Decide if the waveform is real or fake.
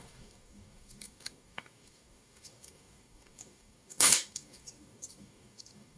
fake